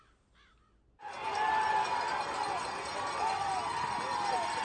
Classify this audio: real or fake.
real